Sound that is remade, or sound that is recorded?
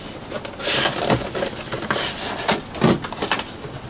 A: recorded